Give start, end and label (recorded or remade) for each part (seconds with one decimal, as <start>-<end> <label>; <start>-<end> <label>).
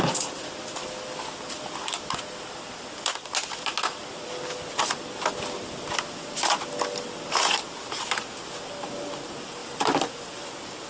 0.0-9.6 recorded; 9.6-10.5 remade; 10.5-10.9 recorded